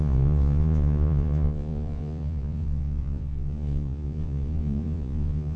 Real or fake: fake